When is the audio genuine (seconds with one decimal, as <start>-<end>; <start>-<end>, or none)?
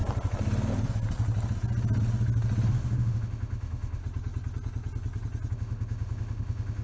0.0-2.7; 4.0-5.5